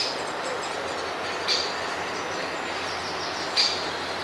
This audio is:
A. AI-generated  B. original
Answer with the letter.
B